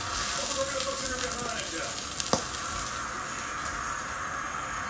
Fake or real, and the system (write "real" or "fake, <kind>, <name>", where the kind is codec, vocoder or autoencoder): real